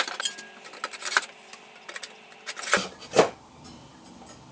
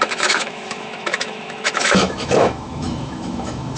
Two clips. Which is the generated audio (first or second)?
second